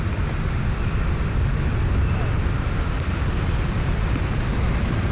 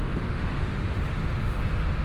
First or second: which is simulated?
second